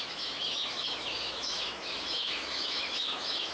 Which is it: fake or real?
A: fake